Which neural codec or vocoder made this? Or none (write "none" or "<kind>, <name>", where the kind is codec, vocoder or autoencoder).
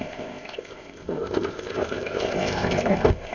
codec, ZipCodec